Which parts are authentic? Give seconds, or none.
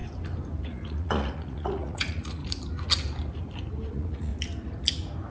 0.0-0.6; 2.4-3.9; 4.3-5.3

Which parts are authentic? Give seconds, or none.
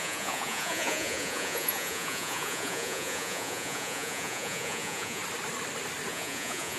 5.2-6.1